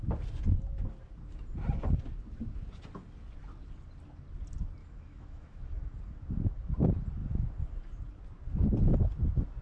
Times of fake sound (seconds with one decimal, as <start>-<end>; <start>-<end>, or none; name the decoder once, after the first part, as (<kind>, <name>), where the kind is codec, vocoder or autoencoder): 4.8-6.0 (autoencoder, DAC-VAE)